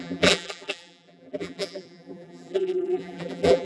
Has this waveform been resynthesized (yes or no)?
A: yes